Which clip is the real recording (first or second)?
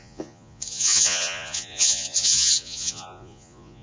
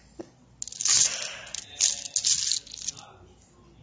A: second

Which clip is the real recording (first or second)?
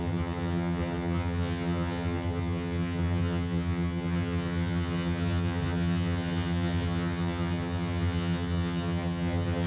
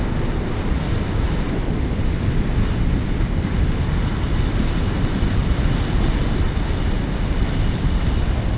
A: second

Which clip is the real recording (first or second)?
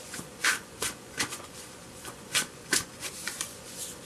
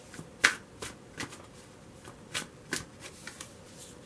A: second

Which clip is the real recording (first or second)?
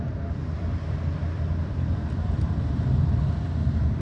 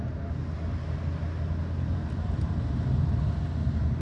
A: second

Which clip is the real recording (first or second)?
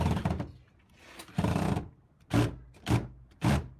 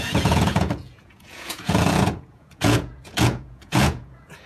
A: first